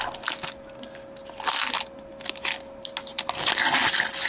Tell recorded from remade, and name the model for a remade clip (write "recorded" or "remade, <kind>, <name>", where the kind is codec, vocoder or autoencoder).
recorded